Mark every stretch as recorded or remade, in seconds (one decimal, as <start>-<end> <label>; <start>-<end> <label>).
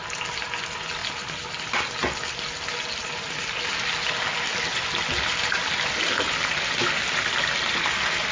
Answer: 0.0-8.3 recorded